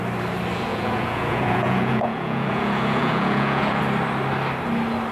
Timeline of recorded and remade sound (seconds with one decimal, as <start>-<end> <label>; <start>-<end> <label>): 0.0-0.7 recorded; 0.7-3.8 remade; 3.8-5.1 recorded